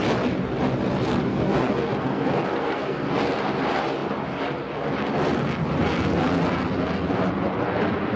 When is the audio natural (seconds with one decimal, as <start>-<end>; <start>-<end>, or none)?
0.0-1.3; 3.1-8.2